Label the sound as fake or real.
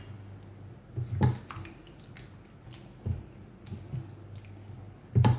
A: real